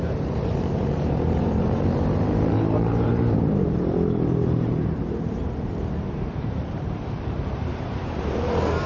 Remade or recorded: remade